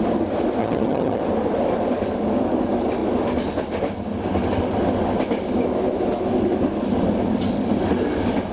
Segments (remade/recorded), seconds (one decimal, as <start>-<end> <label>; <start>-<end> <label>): 0.0-0.6 recorded; 0.6-1.2 remade; 1.2-8.5 recorded